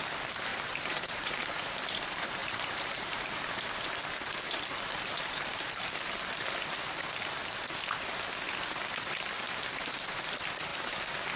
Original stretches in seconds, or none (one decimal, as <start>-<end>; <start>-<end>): 0.0-0.5; 1.7-2.4; 3.5-11.4